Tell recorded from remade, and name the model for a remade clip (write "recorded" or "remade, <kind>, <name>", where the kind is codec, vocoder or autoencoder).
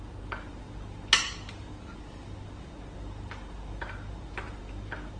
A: recorded